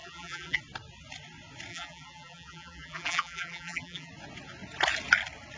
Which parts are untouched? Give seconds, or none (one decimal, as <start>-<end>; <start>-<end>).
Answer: 0.6-1.7; 4.1-5.6